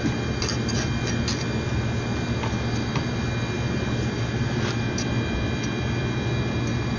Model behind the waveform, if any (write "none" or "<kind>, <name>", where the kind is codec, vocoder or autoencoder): none